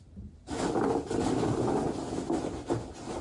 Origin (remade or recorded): recorded